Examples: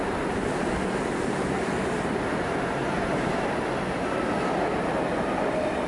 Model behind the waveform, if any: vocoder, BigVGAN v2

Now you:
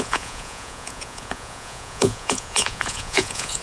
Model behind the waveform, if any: vocoder, Vocos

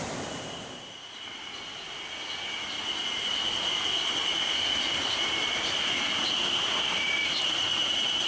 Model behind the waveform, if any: none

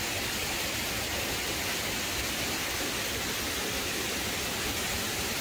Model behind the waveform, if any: none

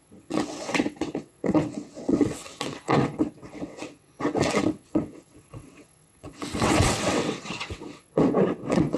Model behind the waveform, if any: vocoder, WaveNeXt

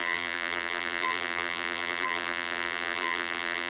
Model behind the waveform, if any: vocoder, BigVGAN v2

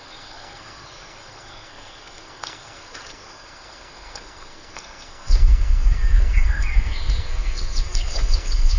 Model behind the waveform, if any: codec, SNAC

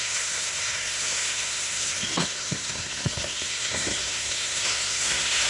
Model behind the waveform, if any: codec, SNAC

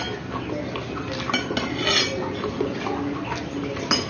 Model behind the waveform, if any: none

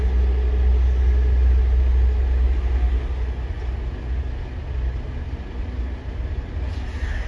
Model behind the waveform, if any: none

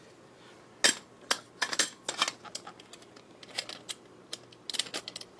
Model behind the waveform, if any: none